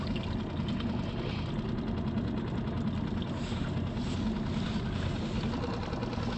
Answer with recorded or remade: recorded